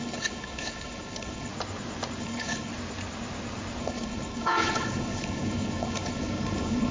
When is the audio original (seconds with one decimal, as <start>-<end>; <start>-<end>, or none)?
1.5-2.2; 2.7-3.8